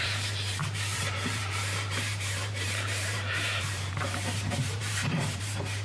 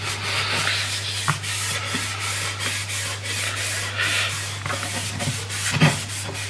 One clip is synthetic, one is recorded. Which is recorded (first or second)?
second